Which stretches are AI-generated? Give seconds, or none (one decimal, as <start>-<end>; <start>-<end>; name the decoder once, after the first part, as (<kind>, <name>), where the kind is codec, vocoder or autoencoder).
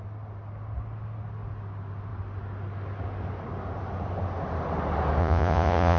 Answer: 5.2-6.0 (vocoder, Vocos)